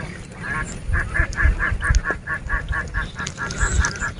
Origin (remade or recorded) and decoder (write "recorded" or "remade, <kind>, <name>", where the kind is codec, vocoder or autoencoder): recorded